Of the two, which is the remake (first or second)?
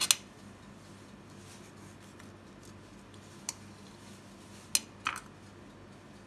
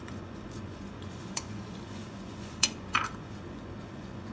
second